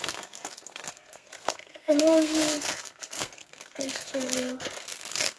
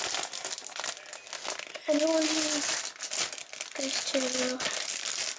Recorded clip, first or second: second